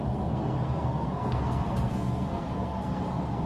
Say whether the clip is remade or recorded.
remade